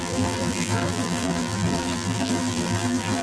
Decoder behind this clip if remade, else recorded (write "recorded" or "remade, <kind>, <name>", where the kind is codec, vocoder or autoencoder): remade, vocoder, BigVGAN v2